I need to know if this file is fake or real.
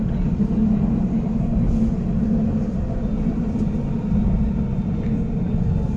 real